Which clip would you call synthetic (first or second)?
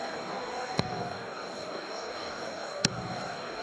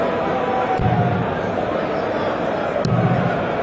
first